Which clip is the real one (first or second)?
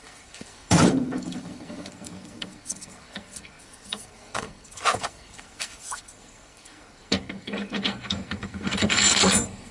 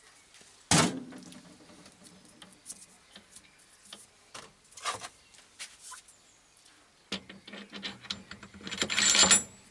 second